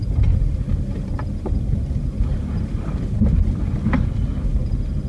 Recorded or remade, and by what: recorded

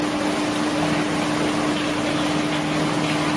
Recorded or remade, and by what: recorded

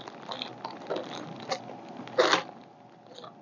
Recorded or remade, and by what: recorded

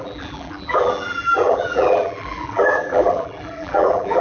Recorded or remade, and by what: remade, vocoder, BigVGAN v2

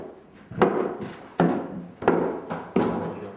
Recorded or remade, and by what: recorded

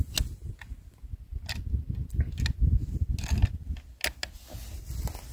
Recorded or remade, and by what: recorded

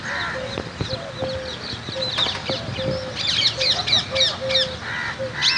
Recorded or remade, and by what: recorded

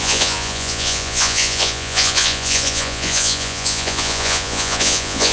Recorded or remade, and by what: remade, vocoder, Vocos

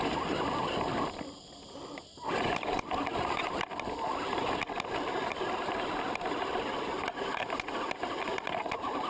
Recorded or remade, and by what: recorded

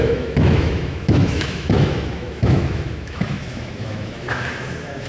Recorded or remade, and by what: remade, autoencoder, DAC-VAE